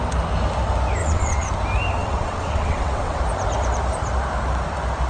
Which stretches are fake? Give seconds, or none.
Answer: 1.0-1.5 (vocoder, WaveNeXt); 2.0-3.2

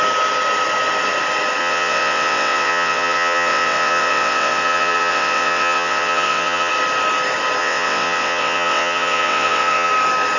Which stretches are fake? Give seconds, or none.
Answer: 1.6-6.7 (vocoder, WaveNeXt); 7.6-9.9

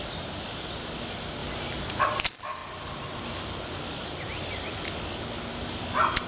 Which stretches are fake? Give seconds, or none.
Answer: none

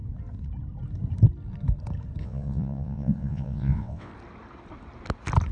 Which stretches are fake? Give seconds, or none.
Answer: 2.2-4.1 (vocoder, WaveNeXt)

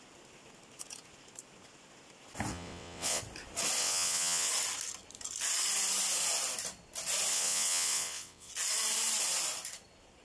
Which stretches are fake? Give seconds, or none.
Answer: 2.5-3.2 (vocoder, WaveNeXt); 3.8-4.5; 7.3-8.5

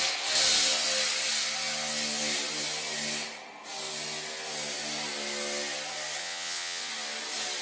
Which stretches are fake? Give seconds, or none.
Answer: 6.2-6.9 (vocoder, WaveNeXt)